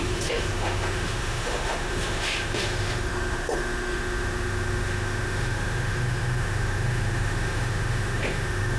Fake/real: fake